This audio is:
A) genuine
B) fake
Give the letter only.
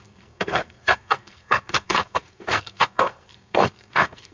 B